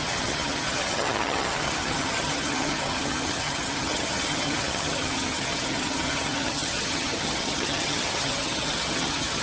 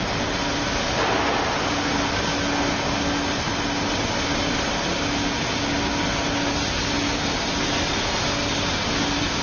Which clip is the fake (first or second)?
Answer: first